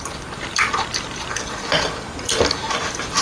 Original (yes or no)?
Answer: yes